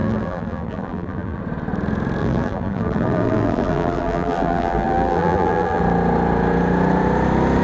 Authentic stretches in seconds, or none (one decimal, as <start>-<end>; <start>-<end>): 1.4-2.2; 5.8-7.6